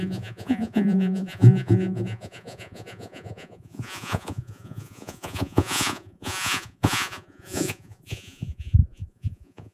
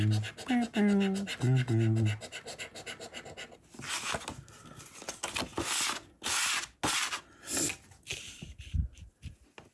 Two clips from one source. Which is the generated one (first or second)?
first